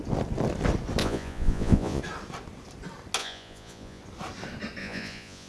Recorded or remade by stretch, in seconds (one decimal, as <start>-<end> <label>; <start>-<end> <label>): 0.0-1.0 recorded; 1.0-2.0 remade; 2.0-3.2 recorded; 3.2-4.0 remade; 4.0-4.8 recorded; 4.8-5.5 remade